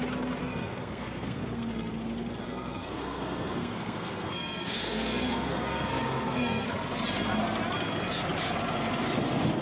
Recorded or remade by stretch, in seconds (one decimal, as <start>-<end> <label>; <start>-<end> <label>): 0.0-0.4 recorded; 0.4-1.9 remade; 1.9-2.4 recorded; 2.4-6.7 remade; 6.7-9.6 recorded